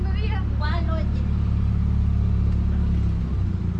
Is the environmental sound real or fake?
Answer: real